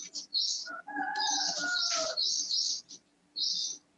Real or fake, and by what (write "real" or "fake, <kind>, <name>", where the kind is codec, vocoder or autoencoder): real